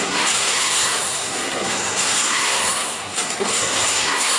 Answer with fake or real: fake